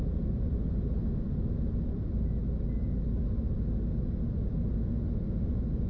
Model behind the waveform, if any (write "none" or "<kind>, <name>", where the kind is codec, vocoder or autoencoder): none